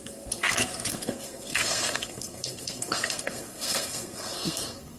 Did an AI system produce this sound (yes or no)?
yes